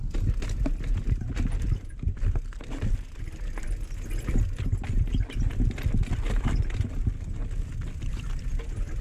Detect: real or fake real